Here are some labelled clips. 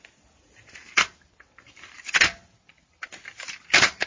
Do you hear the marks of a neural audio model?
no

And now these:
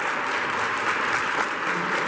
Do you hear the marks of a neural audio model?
no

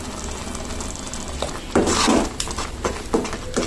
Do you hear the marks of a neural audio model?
no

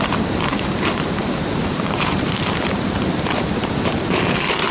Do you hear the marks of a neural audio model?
yes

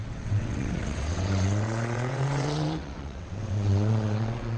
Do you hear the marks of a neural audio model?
yes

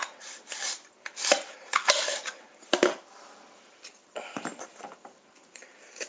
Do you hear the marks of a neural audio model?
no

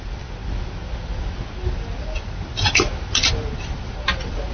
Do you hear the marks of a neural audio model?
no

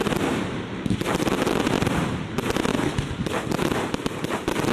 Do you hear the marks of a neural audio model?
no